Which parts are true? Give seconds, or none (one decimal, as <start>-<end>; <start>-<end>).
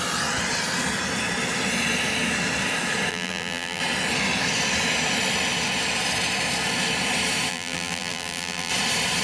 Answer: 0.0-3.1; 3.8-7.5; 8.7-9.2